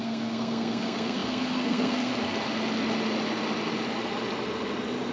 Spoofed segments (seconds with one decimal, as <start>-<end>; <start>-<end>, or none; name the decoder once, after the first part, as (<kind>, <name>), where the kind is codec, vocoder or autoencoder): 0.0-2.1 (codec, SNAC)